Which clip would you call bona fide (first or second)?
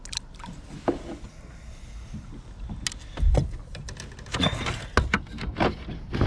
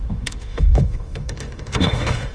first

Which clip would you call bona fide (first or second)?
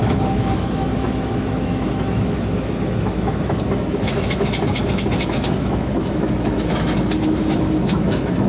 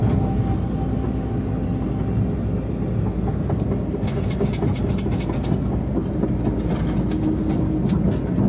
second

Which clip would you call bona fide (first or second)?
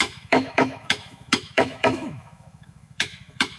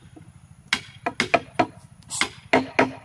second